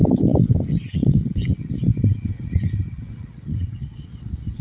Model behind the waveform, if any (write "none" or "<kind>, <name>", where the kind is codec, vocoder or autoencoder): vocoder, WaveNeXt